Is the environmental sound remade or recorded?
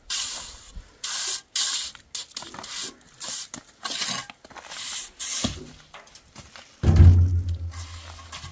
recorded